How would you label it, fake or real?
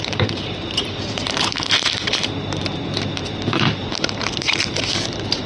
fake